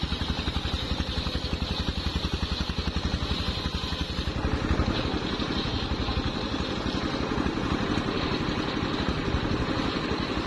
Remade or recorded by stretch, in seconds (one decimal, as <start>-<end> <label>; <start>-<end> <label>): 0.0-2.1 remade; 2.1-3.4 recorded; 3.4-10.5 remade